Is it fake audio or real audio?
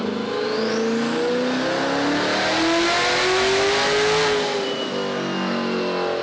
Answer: real